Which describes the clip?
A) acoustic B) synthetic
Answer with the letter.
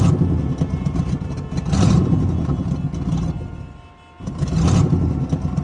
A